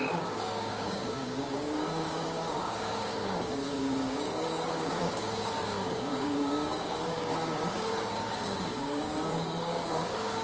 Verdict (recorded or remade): remade